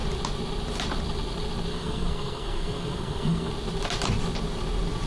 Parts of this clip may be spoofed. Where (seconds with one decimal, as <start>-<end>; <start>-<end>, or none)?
1.7-3.5